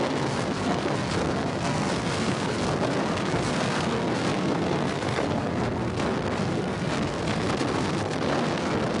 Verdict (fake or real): fake